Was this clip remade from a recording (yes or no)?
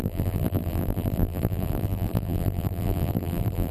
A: yes